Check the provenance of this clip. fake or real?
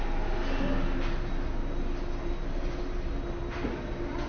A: real